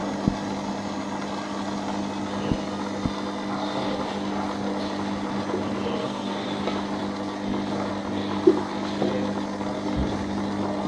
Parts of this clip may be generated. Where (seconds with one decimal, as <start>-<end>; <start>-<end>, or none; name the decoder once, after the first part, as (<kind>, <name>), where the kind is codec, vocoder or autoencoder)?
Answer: 6.0-6.6 (codec, SNAC)